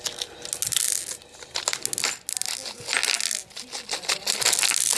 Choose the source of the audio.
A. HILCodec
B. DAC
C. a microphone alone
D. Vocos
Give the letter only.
C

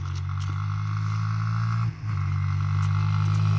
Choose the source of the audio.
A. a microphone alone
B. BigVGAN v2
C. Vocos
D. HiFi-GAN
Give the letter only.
A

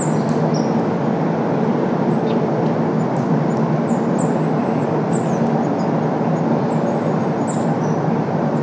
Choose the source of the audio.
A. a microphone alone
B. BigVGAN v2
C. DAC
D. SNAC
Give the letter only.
A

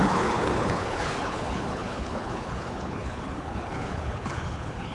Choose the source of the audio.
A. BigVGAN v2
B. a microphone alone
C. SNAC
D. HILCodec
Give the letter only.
D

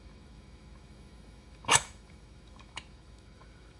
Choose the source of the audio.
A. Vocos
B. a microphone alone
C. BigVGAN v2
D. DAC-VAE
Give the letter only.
D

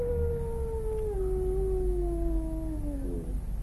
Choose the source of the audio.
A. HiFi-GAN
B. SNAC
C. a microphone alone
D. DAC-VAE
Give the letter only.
C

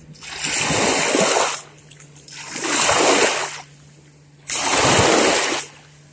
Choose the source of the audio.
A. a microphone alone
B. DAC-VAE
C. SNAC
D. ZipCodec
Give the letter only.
A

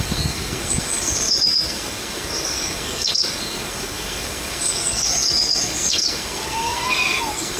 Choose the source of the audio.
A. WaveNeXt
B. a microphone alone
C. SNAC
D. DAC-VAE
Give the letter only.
C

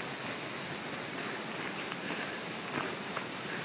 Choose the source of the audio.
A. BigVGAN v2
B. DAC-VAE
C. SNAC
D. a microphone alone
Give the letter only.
D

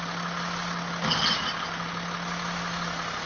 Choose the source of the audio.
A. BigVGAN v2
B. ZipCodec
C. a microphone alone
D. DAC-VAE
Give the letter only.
C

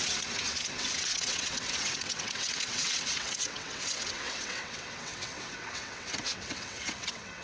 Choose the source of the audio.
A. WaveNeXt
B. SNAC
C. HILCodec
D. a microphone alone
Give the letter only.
A